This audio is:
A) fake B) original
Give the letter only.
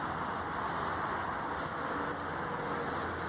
B